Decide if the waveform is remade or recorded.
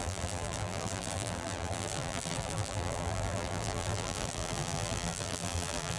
remade